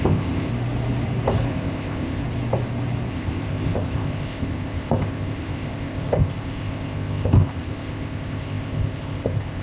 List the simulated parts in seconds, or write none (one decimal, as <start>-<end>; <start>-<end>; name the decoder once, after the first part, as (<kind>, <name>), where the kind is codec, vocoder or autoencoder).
0.0-0.5 (codec, ZipCodec); 1.5-2.2; 3.1-9.6